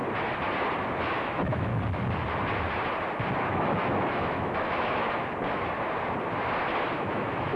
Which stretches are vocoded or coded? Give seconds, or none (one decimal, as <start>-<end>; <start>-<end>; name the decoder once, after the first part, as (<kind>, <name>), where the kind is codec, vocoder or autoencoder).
1.0-1.7 (autoencoder, DAC-VAE); 3.4-5.2; 7.0-7.6